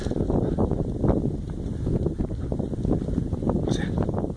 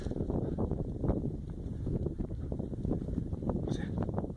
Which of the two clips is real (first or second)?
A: first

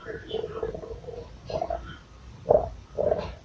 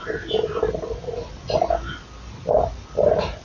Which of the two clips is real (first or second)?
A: second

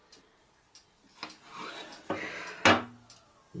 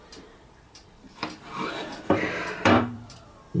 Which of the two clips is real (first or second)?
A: first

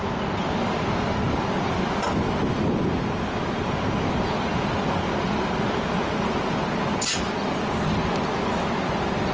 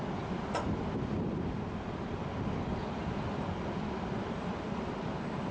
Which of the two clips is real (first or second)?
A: first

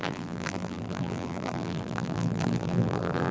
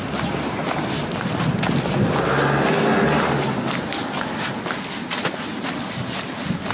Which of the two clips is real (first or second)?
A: second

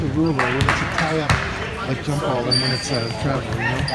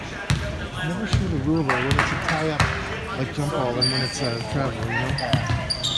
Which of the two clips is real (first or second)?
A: second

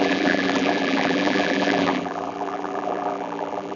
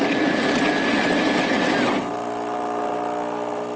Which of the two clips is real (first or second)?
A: second